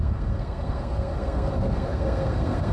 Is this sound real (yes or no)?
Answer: no